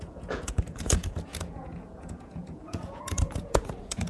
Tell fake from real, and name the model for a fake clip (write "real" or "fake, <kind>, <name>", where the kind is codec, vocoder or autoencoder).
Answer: fake, vocoder, Vocos